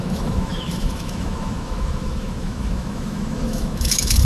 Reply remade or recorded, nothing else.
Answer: remade